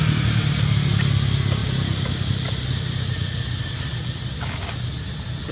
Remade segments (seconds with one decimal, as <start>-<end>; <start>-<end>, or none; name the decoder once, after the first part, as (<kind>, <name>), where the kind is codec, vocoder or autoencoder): none

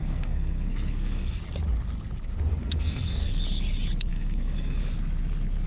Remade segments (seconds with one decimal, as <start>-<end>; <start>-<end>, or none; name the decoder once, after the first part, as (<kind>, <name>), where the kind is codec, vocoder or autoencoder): 0.0-1.4 (codec, SNAC); 2.5-3.4; 4.1-4.8